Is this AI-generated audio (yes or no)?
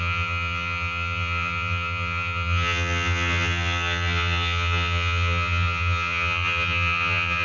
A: yes